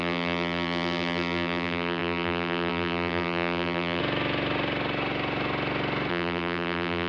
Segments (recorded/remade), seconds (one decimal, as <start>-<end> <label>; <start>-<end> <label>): 0.0-4.0 remade; 4.0-6.1 recorded; 6.1-7.1 remade